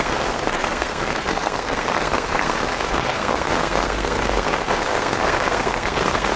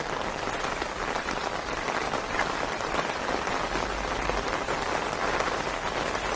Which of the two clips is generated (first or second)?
first